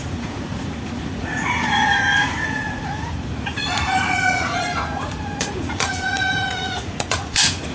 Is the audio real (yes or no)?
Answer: no